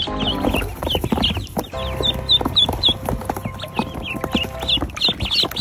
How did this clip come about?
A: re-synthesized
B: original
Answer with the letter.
B